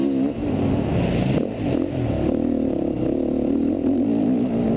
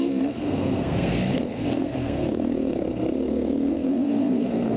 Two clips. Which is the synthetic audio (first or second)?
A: second